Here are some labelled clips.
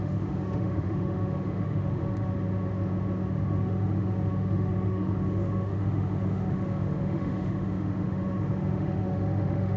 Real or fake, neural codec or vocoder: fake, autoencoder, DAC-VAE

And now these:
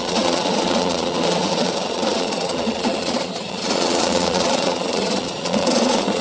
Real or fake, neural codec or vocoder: fake, vocoder, Vocos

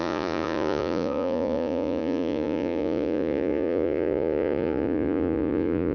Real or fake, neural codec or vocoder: fake, vocoder, Vocos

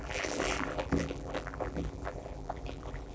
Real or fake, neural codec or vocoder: fake, vocoder, BigVGAN v2